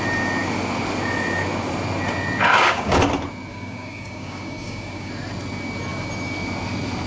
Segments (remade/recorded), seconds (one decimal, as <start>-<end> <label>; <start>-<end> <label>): 0.0-2.5 recorded; 2.5-3.0 remade; 3.0-3.5 recorded; 3.5-5.1 remade; 5.1-7.1 recorded